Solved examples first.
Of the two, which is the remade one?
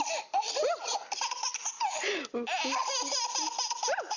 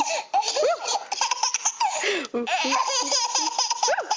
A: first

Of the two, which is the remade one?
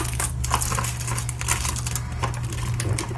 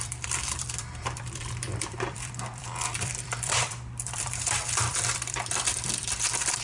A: second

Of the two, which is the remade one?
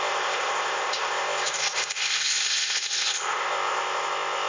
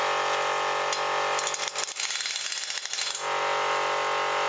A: first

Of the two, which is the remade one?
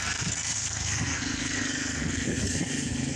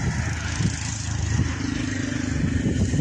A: first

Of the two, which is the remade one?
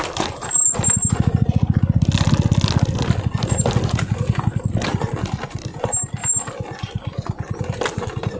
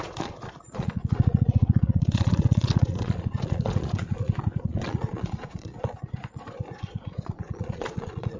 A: second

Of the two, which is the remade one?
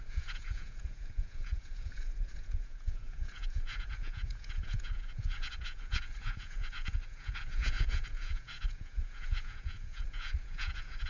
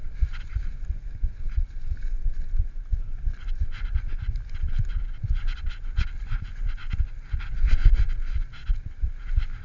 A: first